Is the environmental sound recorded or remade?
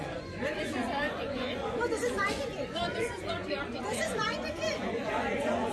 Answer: remade